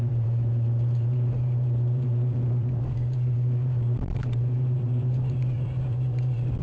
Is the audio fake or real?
fake